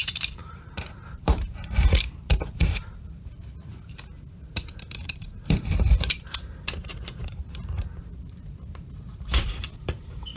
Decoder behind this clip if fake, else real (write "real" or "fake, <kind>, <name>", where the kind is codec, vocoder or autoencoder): fake, vocoder, BigVGAN v2